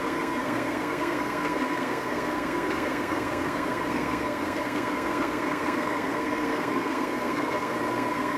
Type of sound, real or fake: fake